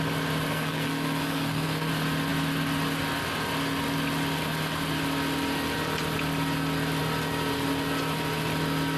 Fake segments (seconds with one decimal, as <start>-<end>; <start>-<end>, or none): 0.5-1.9